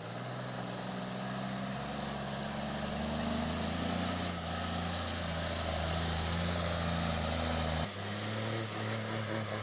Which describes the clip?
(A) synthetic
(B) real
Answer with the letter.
B